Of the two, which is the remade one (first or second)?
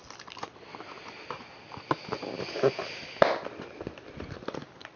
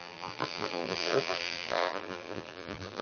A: second